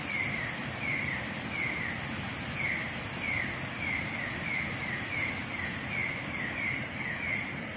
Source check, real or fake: real